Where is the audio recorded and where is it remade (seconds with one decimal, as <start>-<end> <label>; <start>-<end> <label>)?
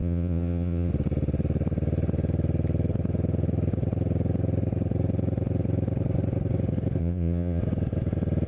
0.0-0.9 remade; 0.9-7.0 recorded; 7.0-7.6 remade; 7.6-8.5 recorded